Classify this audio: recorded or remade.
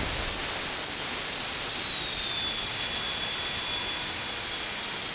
recorded